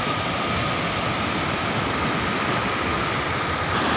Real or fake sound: real